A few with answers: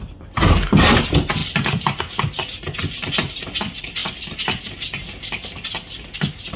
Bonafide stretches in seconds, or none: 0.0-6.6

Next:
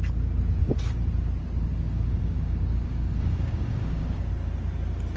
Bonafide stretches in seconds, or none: 0.0-1.7; 4.3-5.2

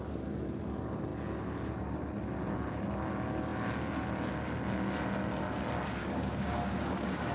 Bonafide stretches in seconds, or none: 0.0-6.0

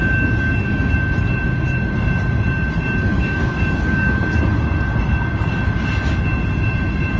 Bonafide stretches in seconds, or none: 0.0-3.1; 4.4-7.2

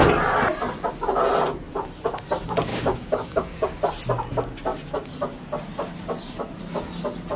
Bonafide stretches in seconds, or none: 0.0-2.7; 3.8-7.4

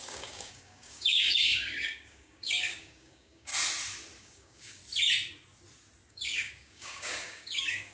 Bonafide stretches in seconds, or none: 3.5-4.2; 4.8-6.1